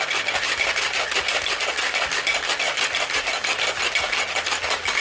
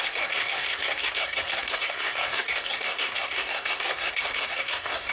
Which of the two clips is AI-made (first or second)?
second